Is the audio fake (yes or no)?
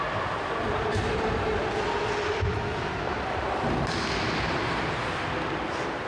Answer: no